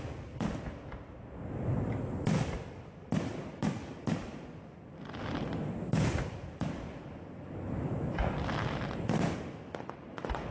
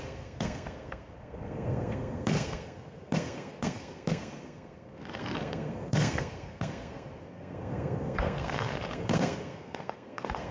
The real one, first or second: first